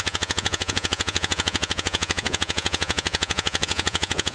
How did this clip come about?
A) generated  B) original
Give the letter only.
A